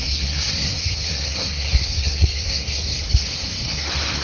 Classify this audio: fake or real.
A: fake